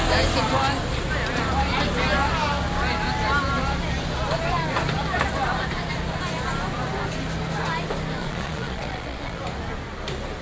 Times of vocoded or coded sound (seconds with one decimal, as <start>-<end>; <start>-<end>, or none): 8.2-9.4

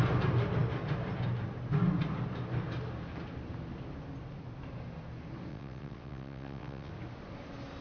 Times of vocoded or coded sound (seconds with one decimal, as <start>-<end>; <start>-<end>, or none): 5.5-6.9

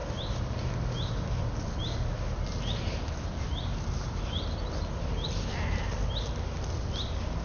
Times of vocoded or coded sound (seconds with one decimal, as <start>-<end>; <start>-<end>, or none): none

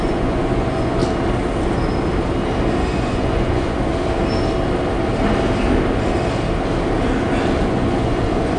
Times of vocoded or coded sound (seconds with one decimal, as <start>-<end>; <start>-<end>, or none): 0.0-1.0; 2.8-3.9; 7.6-8.6

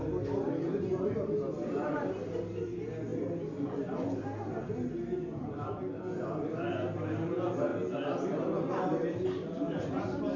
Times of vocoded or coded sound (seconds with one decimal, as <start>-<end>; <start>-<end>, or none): none

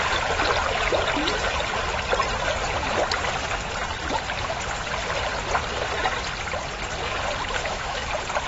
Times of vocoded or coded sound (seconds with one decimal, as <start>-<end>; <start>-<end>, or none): 7.6-8.1